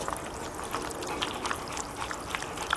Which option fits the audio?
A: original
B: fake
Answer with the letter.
A